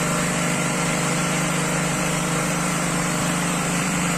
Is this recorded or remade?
remade